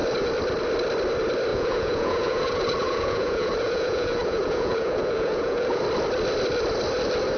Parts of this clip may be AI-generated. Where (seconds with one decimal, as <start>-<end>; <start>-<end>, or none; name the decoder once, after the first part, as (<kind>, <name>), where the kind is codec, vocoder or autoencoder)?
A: 1.5-5.8 (vocoder, Vocos)